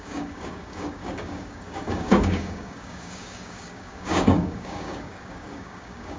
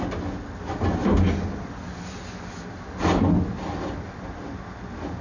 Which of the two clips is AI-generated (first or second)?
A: first